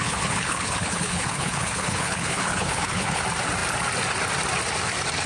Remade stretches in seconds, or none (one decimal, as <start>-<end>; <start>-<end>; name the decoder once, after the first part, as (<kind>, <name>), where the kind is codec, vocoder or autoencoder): 0.0-3.2 (codec, HILCodec)